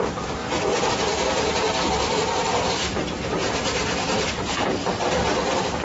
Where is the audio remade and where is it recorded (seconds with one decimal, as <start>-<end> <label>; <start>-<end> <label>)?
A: 0.0-0.4 recorded; 0.4-0.9 remade; 0.9-1.5 recorded; 1.5-5.0 remade; 5.0-5.8 recorded